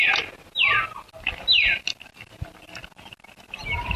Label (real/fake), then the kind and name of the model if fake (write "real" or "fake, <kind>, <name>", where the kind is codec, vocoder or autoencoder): real